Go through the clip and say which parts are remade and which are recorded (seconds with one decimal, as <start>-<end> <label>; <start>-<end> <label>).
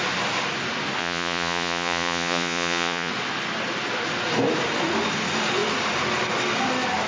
0.0-1.0 recorded; 1.0-3.1 remade; 3.1-7.1 recorded